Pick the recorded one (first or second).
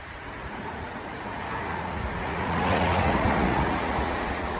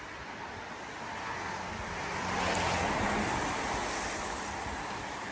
second